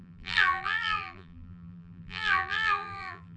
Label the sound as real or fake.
fake